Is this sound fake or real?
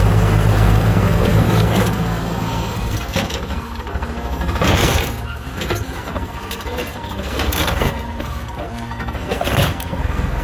fake